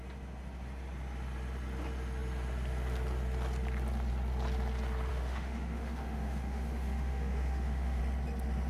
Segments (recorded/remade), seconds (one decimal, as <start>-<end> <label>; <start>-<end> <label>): 0.0-5.1 recorded; 5.1-8.0 remade; 8.0-8.7 recorded